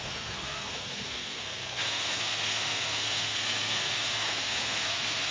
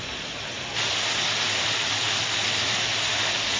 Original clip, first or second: second